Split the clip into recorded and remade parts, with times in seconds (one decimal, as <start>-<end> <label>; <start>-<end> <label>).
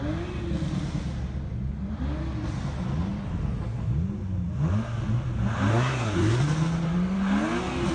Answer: 0.0-5.7 recorded; 5.7-6.4 remade; 6.4-7.9 recorded